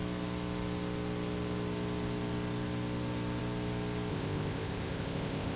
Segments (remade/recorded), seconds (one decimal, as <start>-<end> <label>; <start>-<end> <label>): 0.0-4.1 recorded; 4.1-5.6 remade